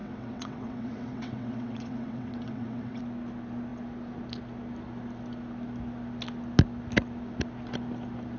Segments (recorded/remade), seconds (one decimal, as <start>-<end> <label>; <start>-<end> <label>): 0.0-3.0 remade; 3.0-8.4 recorded